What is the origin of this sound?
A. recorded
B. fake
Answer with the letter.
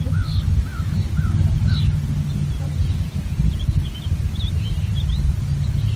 A